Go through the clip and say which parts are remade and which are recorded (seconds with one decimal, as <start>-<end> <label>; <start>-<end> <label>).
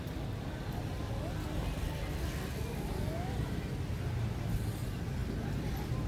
0.0-6.1 recorded